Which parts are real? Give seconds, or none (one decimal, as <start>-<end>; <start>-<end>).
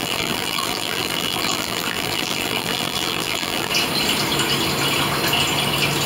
3.7-6.1